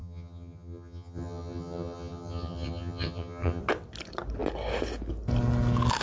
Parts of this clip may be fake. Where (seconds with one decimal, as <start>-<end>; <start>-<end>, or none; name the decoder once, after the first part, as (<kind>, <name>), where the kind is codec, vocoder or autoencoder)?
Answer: 0.0-3.6 (vocoder, HiFi-GAN)